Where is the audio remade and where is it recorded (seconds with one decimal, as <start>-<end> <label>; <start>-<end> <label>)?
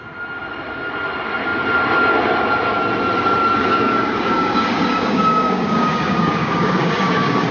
0.0-3.6 recorded; 3.6-7.5 remade